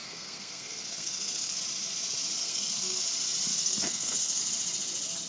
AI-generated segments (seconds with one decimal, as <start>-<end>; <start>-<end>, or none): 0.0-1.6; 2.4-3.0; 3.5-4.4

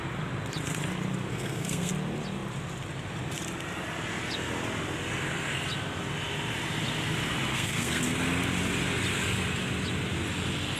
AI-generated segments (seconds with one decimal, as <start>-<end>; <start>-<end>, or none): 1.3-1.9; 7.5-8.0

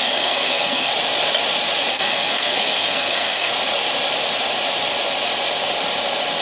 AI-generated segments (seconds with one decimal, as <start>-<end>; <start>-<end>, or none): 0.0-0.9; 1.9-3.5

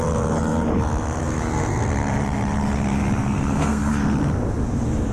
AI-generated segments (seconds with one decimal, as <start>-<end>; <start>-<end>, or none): 1.2-1.9; 3.2-3.8

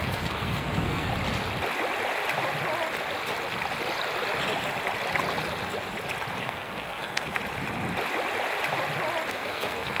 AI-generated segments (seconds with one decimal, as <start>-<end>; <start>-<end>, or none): 0.0-1.1; 6.4-7.4; 9.3-10.0